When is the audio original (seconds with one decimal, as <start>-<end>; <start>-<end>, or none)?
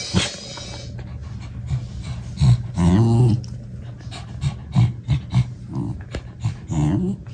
0.0-7.3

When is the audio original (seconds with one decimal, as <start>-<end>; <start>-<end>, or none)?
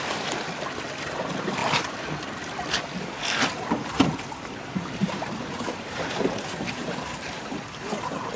0.0-5.0; 7.6-8.4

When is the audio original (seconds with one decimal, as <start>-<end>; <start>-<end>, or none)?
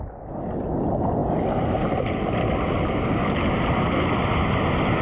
0.0-5.0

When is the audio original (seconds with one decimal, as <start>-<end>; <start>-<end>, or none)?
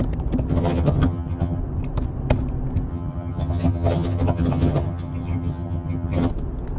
0.0-0.5; 1.6-2.9; 6.3-6.8